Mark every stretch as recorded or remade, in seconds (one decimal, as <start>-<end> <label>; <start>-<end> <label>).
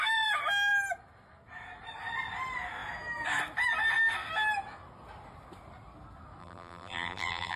0.0-6.4 recorded; 6.4-7.6 remade